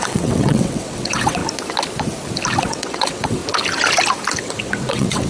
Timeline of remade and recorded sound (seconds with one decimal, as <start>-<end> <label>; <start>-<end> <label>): 0.0-1.4 remade; 1.4-2.6 recorded; 2.6-3.4 remade; 3.4-4.4 recorded; 4.4-5.3 remade